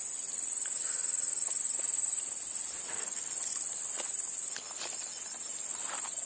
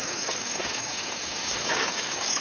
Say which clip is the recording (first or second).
first